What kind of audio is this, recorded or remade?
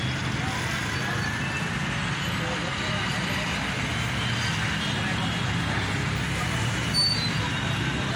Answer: recorded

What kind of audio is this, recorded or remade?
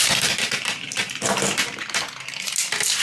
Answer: remade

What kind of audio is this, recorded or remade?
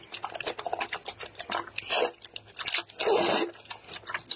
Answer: recorded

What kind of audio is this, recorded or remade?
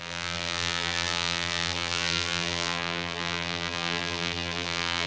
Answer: remade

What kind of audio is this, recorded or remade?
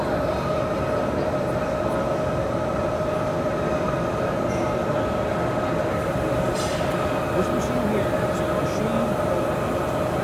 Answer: recorded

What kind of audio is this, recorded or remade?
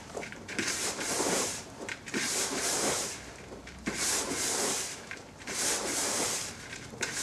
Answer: remade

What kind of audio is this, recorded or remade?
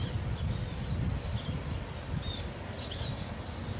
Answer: recorded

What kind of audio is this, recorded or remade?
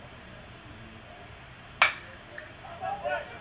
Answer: recorded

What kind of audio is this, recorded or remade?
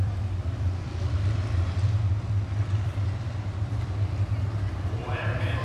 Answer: remade